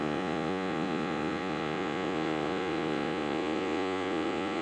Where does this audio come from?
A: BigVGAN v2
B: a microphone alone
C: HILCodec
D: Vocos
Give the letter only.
D